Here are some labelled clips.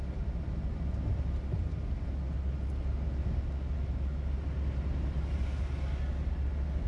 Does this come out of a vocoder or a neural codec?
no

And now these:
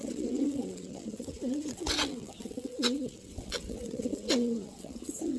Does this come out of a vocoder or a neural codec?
yes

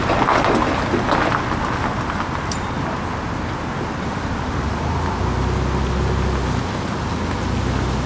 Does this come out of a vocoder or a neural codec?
no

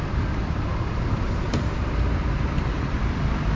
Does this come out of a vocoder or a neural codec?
yes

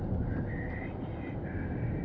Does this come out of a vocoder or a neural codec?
no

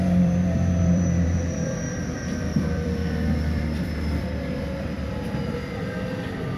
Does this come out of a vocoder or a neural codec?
yes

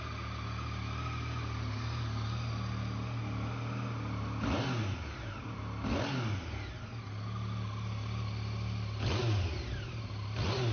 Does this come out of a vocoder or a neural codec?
no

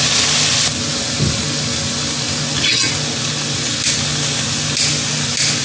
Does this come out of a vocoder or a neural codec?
no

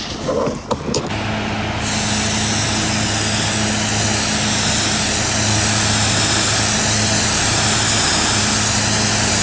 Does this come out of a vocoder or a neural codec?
no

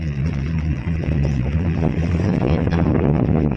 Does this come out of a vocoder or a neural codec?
yes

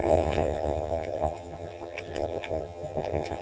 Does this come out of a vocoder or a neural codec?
yes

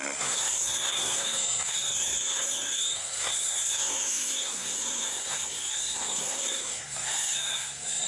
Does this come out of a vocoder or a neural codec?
yes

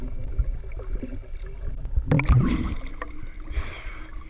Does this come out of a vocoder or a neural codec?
no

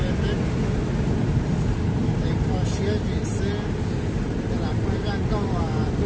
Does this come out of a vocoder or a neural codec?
no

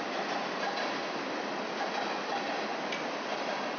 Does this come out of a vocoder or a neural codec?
no